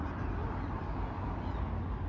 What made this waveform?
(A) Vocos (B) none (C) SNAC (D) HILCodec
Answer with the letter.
B